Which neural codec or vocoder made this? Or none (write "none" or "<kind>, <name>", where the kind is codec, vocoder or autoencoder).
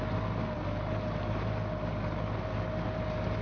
none